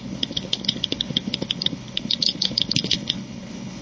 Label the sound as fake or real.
fake